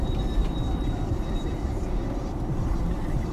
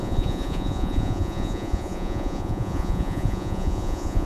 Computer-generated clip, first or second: second